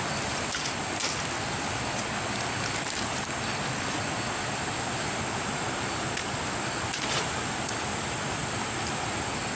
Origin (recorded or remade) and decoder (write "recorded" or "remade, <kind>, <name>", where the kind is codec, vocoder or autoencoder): recorded